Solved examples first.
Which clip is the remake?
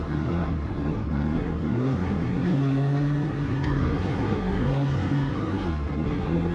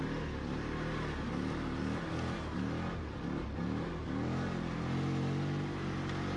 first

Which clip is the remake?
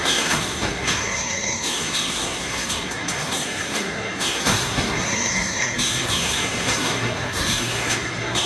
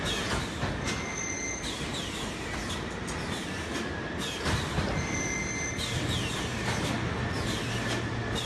first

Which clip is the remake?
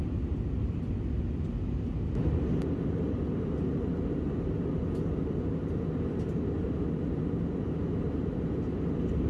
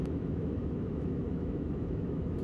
second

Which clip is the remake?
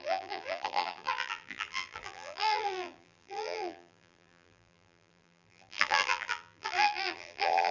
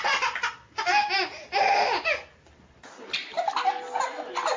first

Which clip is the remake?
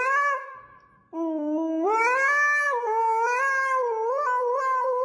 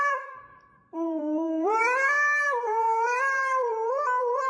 second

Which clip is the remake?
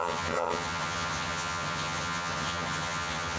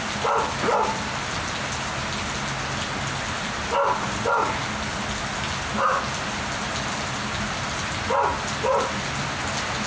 first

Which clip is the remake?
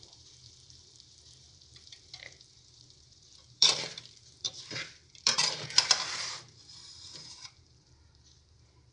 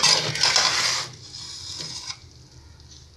first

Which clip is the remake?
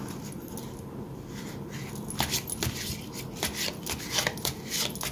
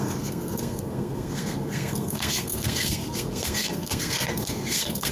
second